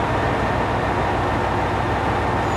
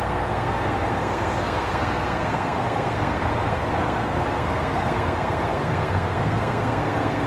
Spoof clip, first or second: second